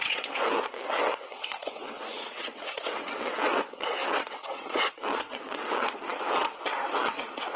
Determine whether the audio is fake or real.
fake